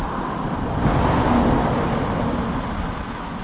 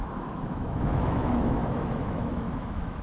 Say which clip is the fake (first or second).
second